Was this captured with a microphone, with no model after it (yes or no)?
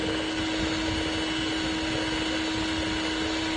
yes